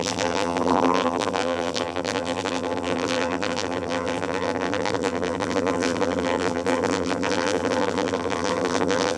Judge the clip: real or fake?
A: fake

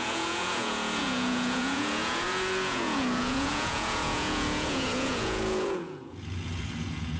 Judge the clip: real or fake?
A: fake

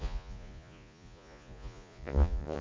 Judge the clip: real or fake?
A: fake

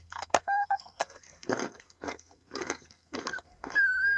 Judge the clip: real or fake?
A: fake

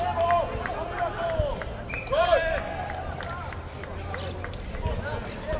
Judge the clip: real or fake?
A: real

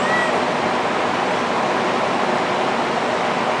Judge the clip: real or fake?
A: real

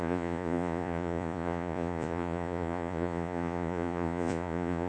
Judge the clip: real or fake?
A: fake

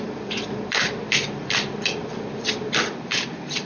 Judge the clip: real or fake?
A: fake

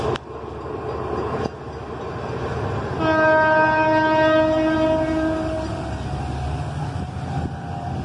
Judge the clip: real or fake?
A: real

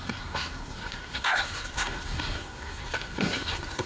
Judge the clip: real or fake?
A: fake